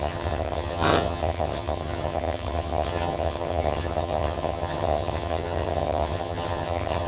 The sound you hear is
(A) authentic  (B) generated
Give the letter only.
B